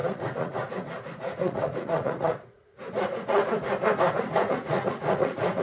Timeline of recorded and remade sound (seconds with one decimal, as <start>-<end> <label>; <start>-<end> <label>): 0.0-3.4 remade; 3.4-4.1 recorded; 4.1-5.6 remade